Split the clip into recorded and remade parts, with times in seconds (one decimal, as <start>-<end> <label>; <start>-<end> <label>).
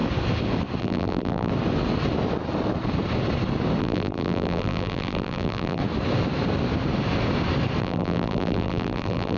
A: 0.0-0.8 recorded; 0.8-1.5 remade; 1.5-3.8 recorded; 3.8-5.8 remade; 5.8-7.8 recorded; 7.8-9.4 remade